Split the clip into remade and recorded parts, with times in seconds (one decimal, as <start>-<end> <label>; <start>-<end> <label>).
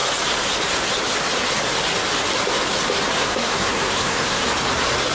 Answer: 0.0-3.1 recorded; 3.1-4.4 remade; 4.4-5.1 recorded